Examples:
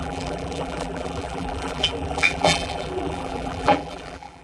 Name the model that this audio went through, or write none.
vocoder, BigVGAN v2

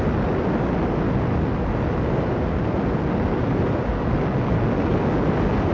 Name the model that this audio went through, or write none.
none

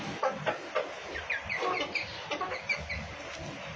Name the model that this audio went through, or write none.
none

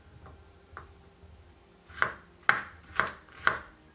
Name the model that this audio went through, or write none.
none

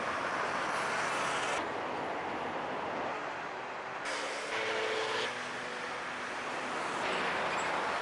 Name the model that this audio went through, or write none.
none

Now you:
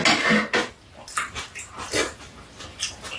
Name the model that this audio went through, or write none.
none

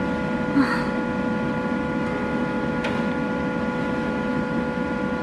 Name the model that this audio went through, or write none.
none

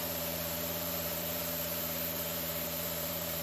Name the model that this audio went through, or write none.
vocoder, BigVGAN v2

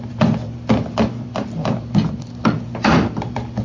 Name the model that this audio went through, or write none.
vocoder, BigVGAN v2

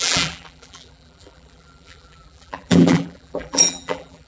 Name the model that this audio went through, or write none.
vocoder, BigVGAN v2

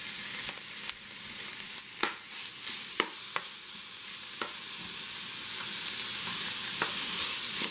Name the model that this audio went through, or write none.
none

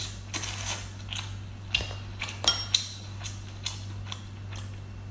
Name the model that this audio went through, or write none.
none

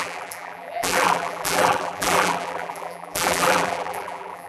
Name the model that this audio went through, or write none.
vocoder, BigVGAN v2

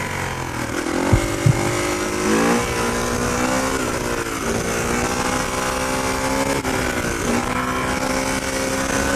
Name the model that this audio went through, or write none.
none